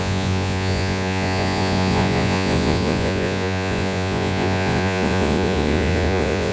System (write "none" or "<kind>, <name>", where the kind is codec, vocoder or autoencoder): vocoder, Vocos